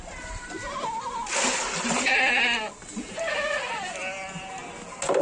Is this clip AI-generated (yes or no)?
no